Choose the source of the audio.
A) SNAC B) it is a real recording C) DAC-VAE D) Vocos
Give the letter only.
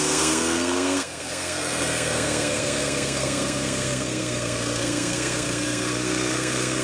A